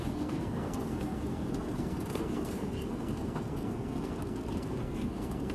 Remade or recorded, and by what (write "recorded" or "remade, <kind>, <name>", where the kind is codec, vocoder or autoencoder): remade, codec, SNAC